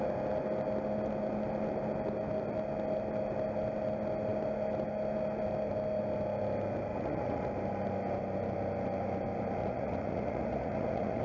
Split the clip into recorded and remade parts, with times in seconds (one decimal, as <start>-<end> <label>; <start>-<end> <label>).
0.0-6.9 recorded; 6.9-7.5 remade; 7.5-9.6 recorded; 9.6-11.2 remade